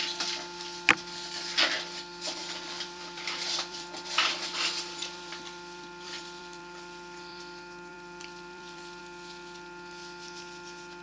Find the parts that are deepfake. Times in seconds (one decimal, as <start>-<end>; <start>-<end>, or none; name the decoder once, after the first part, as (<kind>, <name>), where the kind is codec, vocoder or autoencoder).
2.4-7.4 (vocoder, BigVGAN v2); 7.9-9.0